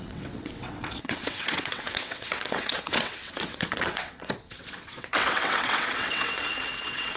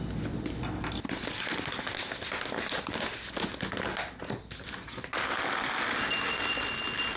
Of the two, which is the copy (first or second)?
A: first